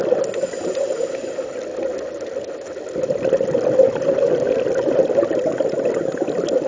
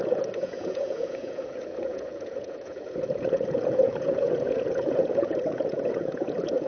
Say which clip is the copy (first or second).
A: second